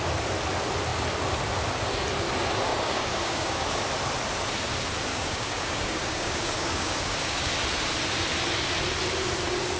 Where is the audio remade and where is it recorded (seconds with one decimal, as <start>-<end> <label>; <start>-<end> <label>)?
0.0-2.7 recorded; 2.7-3.8 remade; 3.8-5.1 recorded; 5.1-7.5 remade; 7.5-9.8 recorded